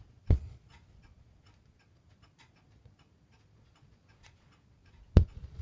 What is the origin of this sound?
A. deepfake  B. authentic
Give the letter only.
A